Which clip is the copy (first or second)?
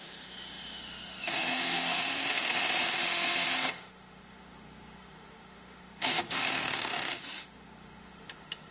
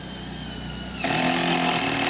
first